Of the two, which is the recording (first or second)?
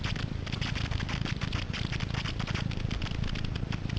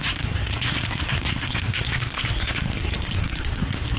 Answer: first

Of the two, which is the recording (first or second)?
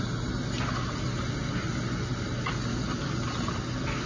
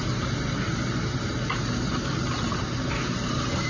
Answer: first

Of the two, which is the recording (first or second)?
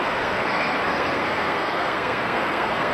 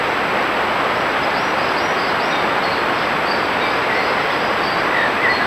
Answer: second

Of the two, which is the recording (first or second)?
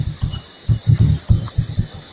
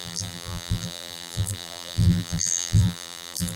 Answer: first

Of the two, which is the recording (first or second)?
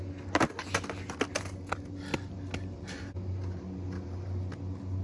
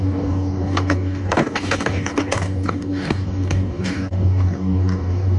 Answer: first